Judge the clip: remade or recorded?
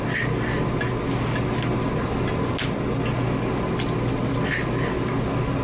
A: recorded